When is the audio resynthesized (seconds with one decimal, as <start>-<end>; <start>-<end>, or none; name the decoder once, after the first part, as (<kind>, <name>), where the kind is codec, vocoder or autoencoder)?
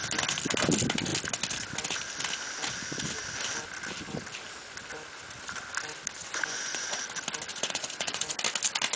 6.2-6.9 (vocoder, Vocos); 7.5-8.3